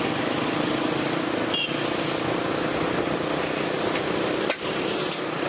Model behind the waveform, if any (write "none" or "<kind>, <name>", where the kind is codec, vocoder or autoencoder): none